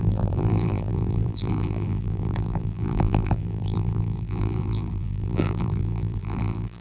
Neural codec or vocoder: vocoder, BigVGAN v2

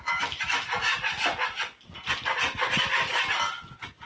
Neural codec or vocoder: none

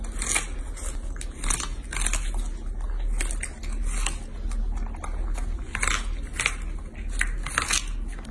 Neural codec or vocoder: none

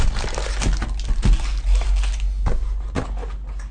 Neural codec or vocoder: none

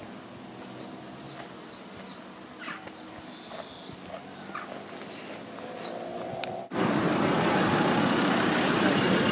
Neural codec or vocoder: none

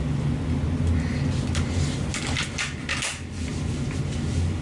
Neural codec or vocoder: none